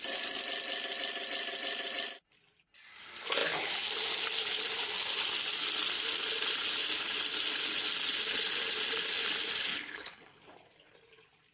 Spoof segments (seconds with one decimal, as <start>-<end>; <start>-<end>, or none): 9.7-10.4